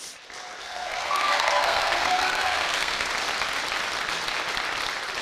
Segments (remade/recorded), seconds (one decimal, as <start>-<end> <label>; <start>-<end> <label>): 0.0-0.6 recorded; 0.6-3.1 remade; 3.1-5.2 recorded